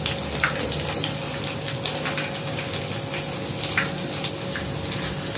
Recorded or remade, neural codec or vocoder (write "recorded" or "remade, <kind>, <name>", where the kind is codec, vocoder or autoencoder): recorded